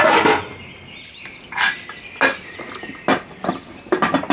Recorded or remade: recorded